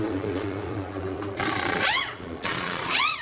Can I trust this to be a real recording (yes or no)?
no